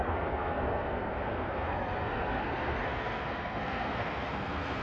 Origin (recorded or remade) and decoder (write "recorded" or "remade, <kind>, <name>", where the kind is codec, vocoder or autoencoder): remade, codec, SNAC